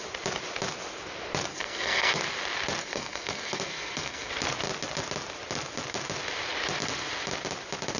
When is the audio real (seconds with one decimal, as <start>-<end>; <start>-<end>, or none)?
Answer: 0.0-1.5; 2.2-2.8; 4.3-8.0